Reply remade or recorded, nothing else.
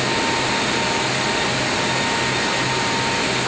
recorded